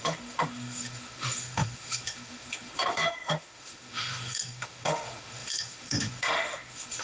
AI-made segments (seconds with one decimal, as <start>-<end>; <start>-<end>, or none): 0.0-7.0

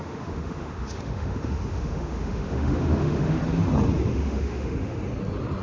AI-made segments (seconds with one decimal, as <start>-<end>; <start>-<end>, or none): 0.0-3.4; 4.1-5.0

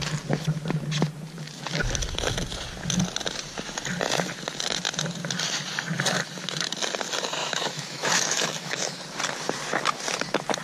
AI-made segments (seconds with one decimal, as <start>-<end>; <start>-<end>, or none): 7.4-9.0

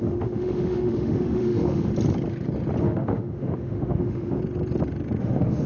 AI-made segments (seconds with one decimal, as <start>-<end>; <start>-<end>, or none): 0.0-1.9; 2.8-4.4; 5.2-5.7

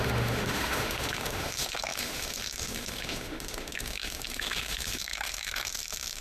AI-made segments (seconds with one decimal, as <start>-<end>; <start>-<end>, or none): 0.0-6.2

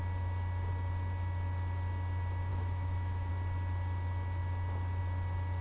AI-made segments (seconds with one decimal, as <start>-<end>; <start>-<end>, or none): 2.5-3.3